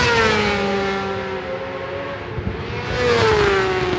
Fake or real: real